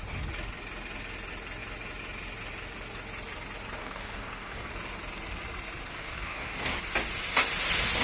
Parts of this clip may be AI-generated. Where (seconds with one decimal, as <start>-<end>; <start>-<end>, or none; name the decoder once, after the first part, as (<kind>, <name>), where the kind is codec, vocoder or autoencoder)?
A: 3.8-4.7 (codec, DAC); 5.9-6.8